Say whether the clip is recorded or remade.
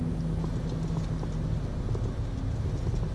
recorded